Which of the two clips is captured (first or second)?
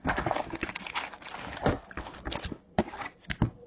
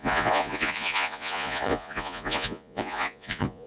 first